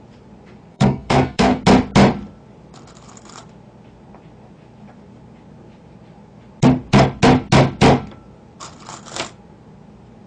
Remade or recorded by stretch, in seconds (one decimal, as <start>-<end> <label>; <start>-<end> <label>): 0.0-0.7 recorded; 0.7-1.6 remade; 1.6-10.3 recorded